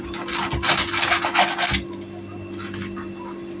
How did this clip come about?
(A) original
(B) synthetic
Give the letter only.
A